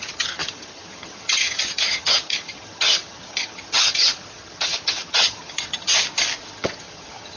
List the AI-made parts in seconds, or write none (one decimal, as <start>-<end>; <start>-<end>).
0.0-5.9; 6.4-7.4